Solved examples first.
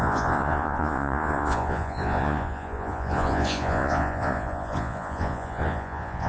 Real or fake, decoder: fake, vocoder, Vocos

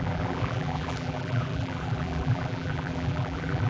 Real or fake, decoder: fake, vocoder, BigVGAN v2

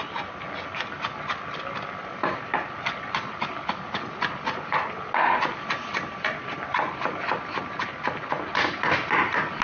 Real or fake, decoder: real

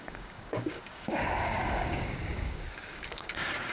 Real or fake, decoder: fake, codec, DAC